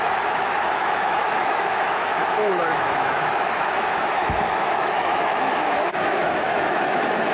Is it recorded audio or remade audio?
remade